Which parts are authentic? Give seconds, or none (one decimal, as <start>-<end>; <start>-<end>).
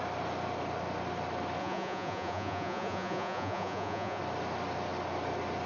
0.0-1.6; 4.2-5.7